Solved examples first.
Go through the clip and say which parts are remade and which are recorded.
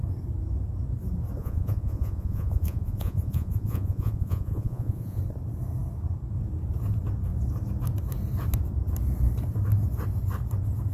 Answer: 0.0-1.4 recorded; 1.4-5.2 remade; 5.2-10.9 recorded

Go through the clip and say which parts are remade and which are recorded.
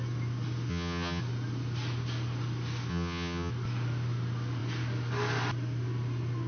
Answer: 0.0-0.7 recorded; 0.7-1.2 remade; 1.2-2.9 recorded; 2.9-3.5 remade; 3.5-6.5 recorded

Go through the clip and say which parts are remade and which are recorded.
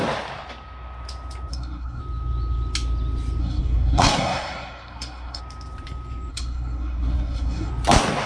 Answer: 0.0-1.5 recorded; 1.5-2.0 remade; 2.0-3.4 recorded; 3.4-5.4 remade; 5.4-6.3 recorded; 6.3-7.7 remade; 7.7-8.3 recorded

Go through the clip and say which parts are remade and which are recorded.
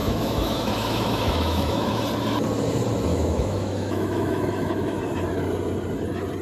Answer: 0.0-2.0 remade; 2.0-3.1 recorded; 3.1-5.0 remade; 5.0-6.4 recorded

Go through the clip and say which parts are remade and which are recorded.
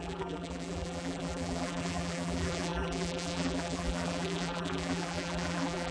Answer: 0.0-5.9 remade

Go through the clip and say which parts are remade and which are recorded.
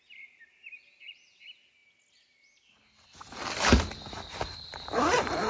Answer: 0.0-5.5 recorded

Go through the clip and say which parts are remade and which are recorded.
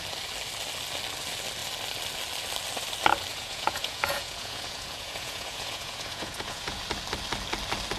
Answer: 0.0-3.3 recorded; 3.3-6.8 remade; 6.8-8.0 recorded